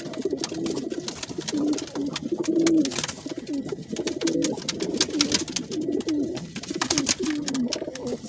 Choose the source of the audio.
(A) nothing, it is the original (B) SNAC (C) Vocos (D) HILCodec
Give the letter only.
A